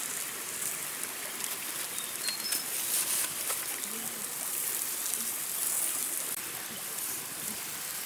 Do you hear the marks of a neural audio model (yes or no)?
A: yes